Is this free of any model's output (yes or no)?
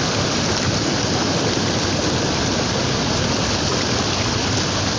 yes